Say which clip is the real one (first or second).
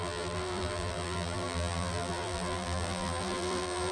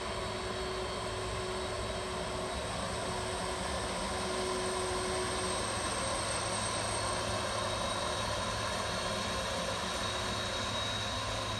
second